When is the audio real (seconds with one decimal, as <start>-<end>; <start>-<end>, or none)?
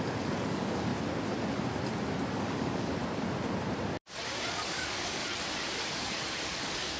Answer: 0.9-2.3; 3.0-4.5; 5.2-5.9